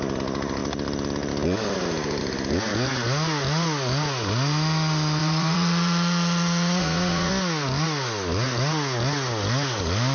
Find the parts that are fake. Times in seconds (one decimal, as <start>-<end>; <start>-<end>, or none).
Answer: 5.2-7.3